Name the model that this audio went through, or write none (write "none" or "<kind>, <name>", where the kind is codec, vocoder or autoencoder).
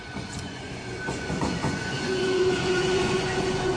vocoder, Vocos